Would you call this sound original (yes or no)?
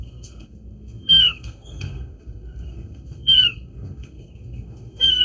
no